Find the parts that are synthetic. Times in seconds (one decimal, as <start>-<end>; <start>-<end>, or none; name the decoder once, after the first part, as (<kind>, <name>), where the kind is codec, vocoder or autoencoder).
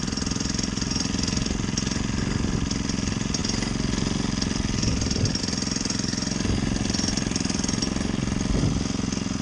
none